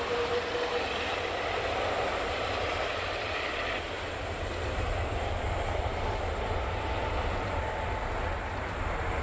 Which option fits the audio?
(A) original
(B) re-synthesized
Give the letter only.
A